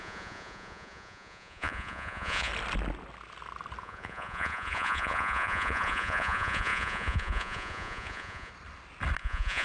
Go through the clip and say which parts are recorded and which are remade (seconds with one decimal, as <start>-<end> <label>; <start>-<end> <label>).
0.0-2.5 remade; 2.5-3.8 recorded; 3.8-8.5 remade; 8.5-9.2 recorded; 9.2-9.6 remade